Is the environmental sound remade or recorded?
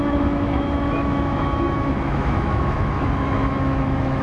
remade